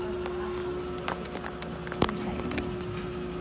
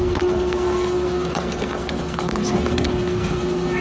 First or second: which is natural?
first